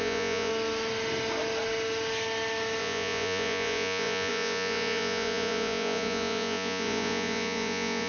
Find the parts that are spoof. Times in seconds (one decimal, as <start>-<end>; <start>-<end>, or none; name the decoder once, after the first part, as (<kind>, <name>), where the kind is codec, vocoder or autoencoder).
0.0-0.5 (vocoder, Vocos); 2.8-8.1